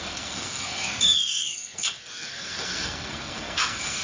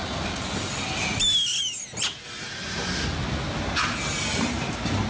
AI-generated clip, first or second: first